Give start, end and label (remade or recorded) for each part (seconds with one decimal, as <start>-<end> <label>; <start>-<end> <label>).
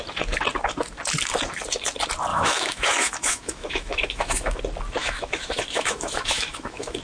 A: 0.0-2.3 recorded; 2.3-4.6 remade; 4.6-5.0 recorded; 5.0-7.0 remade